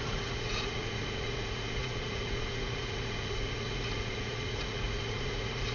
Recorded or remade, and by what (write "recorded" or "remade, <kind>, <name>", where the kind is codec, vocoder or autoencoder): remade, vocoder, Vocos